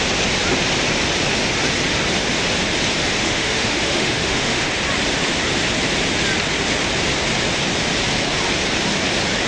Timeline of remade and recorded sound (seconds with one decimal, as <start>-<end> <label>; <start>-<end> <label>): 0.0-3.2 recorded; 3.2-4.7 remade; 4.7-9.5 recorded